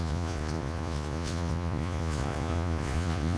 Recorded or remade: remade